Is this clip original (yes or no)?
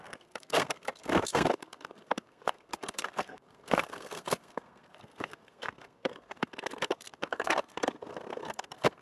no